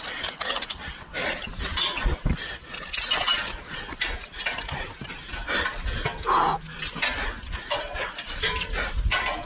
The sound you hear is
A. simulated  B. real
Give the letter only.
B